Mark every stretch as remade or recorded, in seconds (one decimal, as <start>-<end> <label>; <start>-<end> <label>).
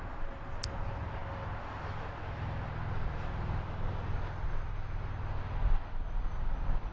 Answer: 0.0-6.9 recorded